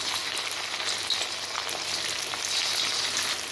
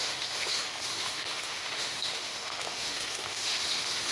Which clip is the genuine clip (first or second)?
first